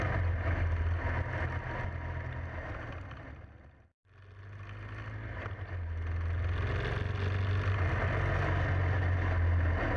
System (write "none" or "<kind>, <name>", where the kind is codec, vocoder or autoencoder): none